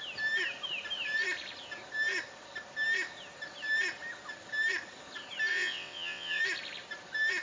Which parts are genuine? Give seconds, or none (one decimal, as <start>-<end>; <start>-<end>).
0.0-5.5; 6.4-7.4